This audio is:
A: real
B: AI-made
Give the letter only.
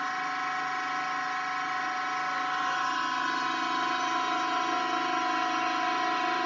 A